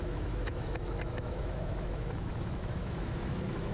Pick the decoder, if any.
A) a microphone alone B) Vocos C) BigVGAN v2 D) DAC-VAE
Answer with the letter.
D